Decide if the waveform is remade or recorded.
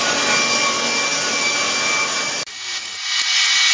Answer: recorded